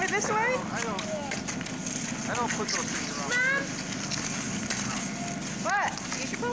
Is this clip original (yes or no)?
yes